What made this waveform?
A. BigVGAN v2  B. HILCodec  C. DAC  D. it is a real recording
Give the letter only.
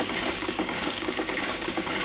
C